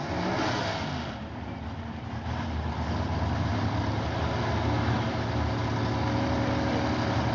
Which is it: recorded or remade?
recorded